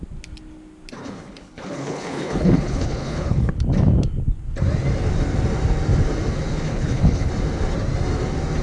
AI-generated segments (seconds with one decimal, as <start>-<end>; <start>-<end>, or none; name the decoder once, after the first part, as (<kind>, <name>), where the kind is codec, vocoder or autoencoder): 1.0-3.5 (codec, HILCodec); 6.5-7.3